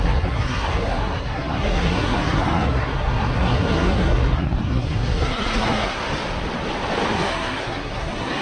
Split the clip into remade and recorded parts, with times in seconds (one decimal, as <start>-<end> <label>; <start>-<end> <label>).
0.0-6.0 remade; 6.0-7.1 recorded; 7.1-8.4 remade